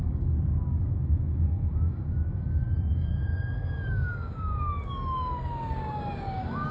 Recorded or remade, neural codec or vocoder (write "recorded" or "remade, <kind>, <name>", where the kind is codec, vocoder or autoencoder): remade, codec, DAC